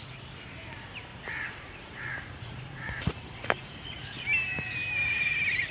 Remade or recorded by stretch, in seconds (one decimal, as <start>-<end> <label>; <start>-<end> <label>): 0.0-1.1 recorded; 1.1-4.2 remade; 4.2-5.7 recorded